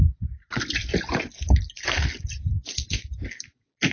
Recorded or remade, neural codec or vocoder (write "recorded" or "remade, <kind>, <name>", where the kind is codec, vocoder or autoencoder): recorded